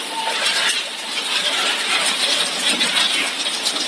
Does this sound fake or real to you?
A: fake